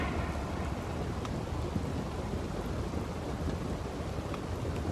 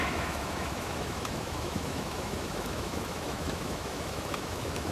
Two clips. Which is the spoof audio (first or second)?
second